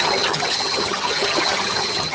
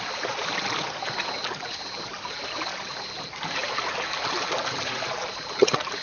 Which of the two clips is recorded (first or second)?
second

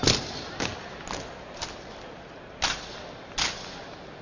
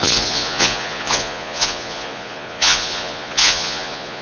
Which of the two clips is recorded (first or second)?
first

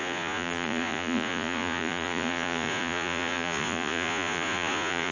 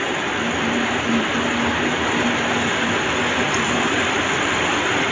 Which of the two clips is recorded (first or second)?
second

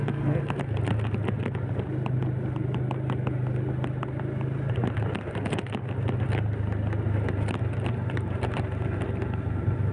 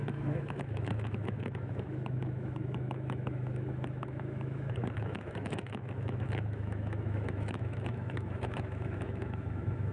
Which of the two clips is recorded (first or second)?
first